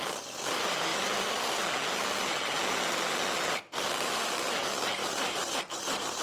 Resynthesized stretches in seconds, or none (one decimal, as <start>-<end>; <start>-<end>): 5.0-5.6